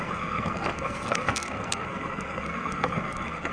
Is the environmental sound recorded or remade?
remade